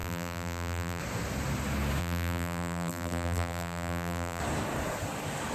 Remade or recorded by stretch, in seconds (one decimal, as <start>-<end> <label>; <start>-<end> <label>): 0.0-1.0 remade; 1.0-2.0 recorded; 2.0-4.4 remade; 4.4-5.5 recorded